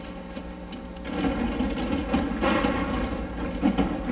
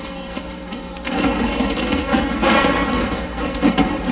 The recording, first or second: first